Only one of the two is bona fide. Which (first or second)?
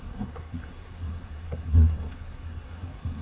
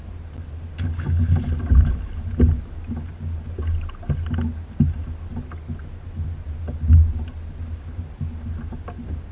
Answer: second